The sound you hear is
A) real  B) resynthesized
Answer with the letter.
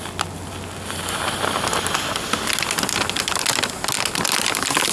A